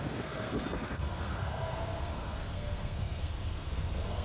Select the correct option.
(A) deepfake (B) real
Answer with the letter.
A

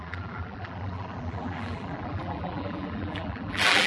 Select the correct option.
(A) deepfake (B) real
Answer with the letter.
A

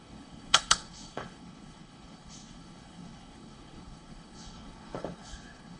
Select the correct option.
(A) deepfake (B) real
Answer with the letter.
A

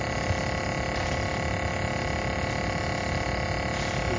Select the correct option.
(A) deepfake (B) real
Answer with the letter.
B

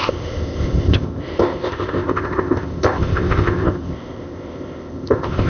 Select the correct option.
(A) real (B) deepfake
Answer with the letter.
B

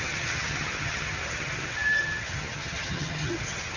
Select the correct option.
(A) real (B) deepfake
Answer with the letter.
B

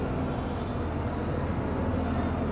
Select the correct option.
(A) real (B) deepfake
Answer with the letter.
A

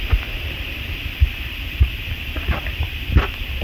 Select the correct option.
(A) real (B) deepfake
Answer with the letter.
B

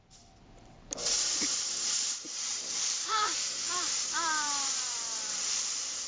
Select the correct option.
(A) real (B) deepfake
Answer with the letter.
B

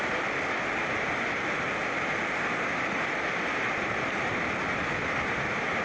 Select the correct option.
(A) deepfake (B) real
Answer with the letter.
B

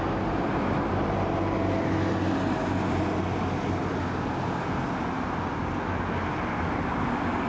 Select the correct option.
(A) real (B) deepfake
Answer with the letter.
A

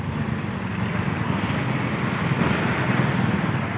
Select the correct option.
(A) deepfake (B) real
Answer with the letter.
B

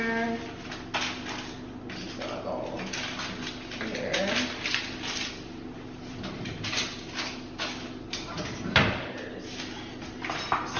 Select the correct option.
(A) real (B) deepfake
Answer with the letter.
A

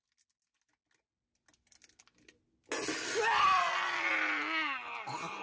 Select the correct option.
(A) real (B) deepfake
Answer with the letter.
A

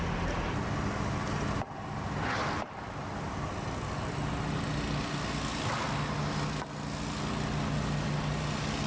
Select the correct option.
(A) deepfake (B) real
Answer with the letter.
B